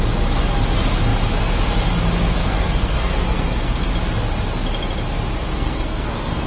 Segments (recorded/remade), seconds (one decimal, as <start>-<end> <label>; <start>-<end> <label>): 0.0-2.4 recorded; 2.4-3.9 remade; 3.9-5.5 recorded; 5.5-6.5 remade